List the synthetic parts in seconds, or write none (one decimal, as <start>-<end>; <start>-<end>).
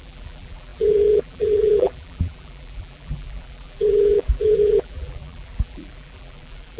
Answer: 0.0-6.8